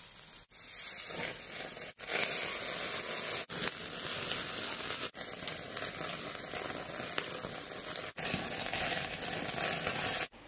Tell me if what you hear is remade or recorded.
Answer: recorded